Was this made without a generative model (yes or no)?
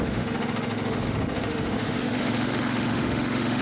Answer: no